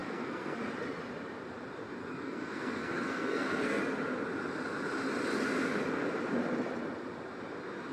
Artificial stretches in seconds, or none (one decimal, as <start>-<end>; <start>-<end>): 0.0-0.6; 2.0-3.8

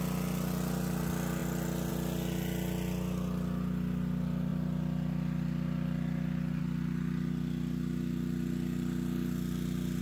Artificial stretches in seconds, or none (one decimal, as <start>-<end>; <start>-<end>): none

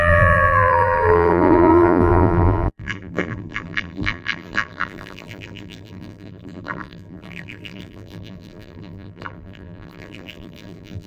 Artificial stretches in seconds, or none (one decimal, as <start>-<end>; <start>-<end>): 0.0-11.1

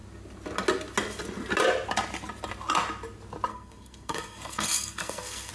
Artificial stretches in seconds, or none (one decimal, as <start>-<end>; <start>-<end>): 3.5-5.5